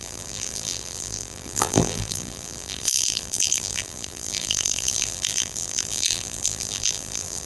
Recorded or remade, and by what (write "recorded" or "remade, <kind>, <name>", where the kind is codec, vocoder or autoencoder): remade, vocoder, BigVGAN v2